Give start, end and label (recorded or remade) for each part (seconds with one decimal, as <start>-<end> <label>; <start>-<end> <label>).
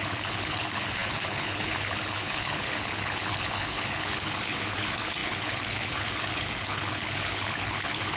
0.0-8.2 remade